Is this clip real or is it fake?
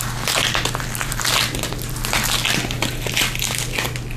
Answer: real